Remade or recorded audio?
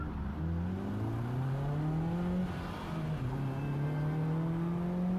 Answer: recorded